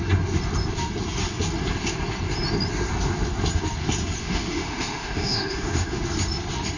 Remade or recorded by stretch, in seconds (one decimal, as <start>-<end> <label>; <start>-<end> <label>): 0.0-4.2 recorded; 4.2-6.0 remade; 6.0-6.8 recorded